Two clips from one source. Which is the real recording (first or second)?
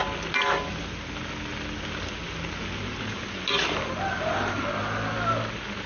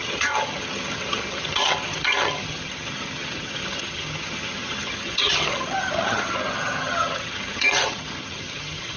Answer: first